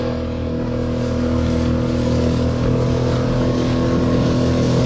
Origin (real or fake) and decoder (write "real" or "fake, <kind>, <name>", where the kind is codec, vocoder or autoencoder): fake, codec, DAC